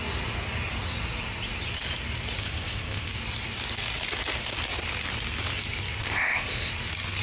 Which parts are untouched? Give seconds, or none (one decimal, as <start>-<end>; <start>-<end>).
0.0-2.4; 3.1-6.0; 6.7-7.2

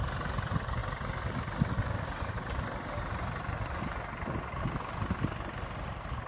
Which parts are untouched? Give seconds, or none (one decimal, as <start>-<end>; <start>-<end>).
0.0-6.3

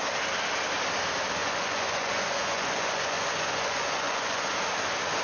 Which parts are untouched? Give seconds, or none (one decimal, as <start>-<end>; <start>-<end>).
0.0-1.4; 4.5-5.2

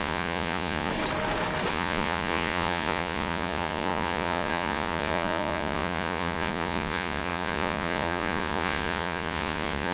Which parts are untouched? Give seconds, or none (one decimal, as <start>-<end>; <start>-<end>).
0.9-1.7

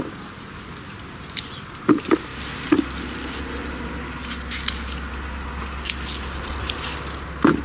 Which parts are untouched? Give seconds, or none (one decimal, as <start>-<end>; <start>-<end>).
0.0-7.6